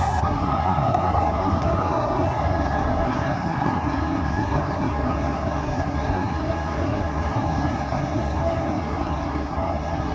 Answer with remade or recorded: remade